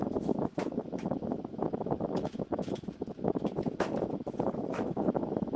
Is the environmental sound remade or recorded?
remade